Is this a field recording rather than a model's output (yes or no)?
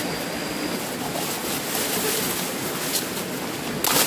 yes